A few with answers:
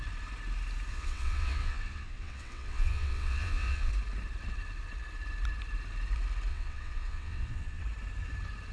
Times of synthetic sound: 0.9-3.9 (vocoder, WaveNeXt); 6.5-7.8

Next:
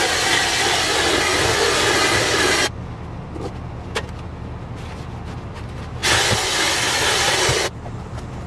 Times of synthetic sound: none

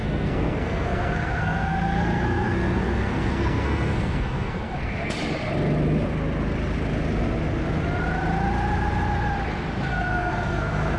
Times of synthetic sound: 0.0-5.1 (codec, SNAC); 9.9-11.0

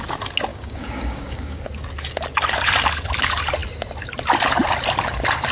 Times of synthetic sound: 0.5-1.6 (codec, DAC)

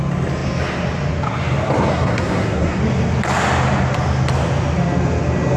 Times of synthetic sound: 1.9-2.8 (codec, SNAC)

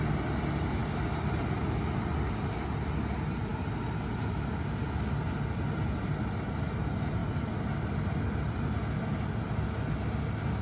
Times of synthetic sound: 0.8-1.5 (vocoder, BigVGAN v2); 7.2-8.8